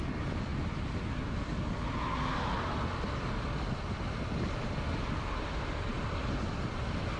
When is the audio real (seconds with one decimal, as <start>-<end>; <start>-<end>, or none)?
0.5-4.2